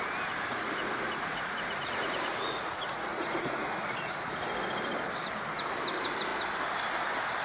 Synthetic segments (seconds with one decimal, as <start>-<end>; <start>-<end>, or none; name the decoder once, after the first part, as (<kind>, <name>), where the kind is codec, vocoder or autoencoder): 0.5-4.3 (vocoder, Vocos)